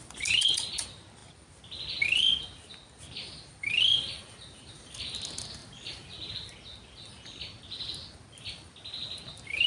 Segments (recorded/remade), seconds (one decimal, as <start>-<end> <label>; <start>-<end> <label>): 0.0-9.7 recorded